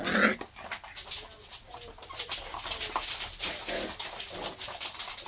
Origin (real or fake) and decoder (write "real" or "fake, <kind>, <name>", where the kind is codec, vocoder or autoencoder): real